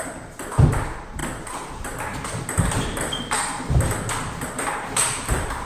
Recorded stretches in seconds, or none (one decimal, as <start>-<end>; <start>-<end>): 1.2-2.4